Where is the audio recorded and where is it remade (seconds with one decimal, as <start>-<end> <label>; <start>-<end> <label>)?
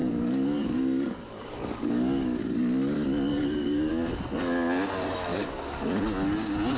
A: 0.0-2.6 remade; 2.6-3.3 recorded; 3.3-3.9 remade; 3.9-5.3 recorded; 5.3-6.0 remade; 6.0-6.8 recorded